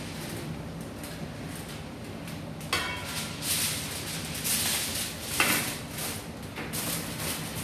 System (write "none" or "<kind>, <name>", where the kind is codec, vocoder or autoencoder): none